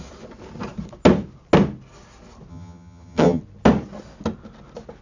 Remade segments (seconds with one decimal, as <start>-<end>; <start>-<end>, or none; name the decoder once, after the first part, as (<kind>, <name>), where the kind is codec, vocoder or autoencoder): 2.5-3.4 (vocoder, HiFi-GAN)